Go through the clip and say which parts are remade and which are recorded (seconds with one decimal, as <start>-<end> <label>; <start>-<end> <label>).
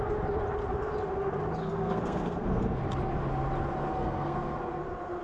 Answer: 0.0-1.6 recorded; 1.6-2.8 remade; 2.8-4.0 recorded; 4.0-4.6 remade; 4.6-5.2 recorded